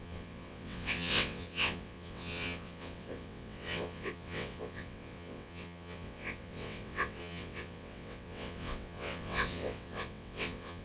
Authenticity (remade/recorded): remade